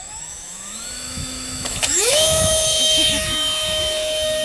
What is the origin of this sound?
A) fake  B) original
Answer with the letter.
A